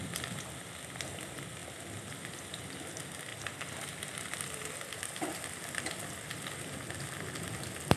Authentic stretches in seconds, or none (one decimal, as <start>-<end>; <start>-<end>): 0.0-8.0